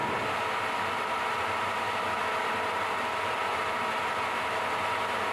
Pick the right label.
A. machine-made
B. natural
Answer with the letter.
B